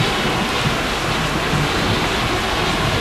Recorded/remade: recorded